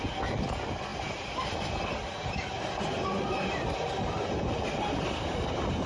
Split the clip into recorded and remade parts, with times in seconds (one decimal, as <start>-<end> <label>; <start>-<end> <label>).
0.0-5.9 recorded